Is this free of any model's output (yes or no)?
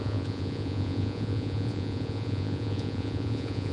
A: no